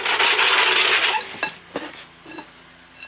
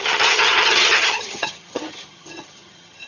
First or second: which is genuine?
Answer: first